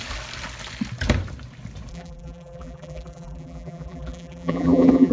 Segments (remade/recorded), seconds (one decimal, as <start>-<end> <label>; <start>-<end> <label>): 0.0-1.9 recorded; 1.9-5.1 remade